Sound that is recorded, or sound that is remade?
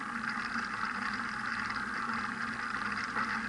recorded